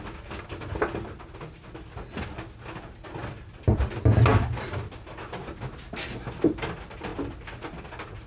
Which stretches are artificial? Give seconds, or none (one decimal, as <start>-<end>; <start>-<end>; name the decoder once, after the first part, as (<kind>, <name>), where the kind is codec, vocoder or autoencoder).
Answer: none